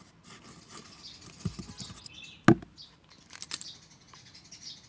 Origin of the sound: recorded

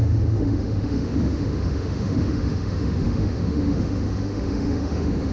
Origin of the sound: remade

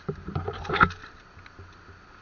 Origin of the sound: recorded